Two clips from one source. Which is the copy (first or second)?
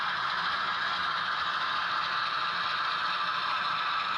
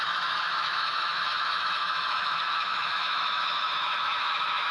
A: second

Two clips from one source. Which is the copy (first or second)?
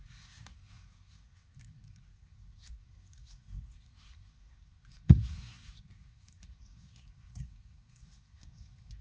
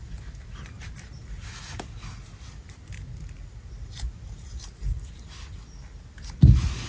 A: first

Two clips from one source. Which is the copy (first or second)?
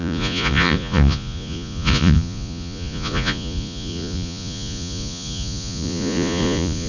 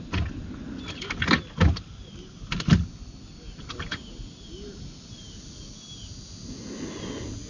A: first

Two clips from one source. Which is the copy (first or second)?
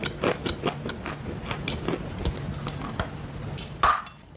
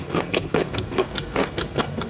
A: second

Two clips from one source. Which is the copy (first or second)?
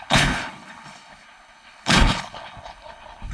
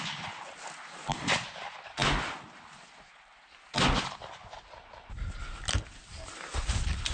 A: first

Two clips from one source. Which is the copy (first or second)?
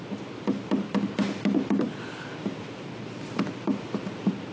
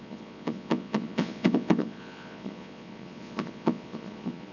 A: second